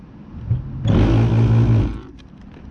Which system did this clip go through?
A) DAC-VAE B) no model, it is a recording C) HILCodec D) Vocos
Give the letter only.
B